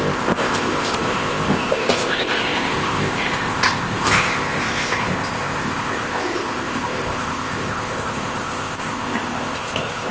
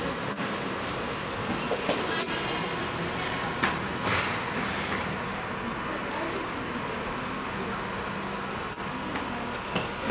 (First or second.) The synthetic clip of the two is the first